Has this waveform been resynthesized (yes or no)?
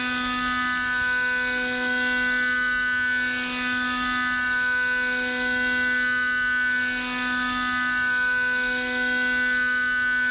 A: no